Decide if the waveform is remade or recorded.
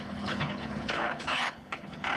remade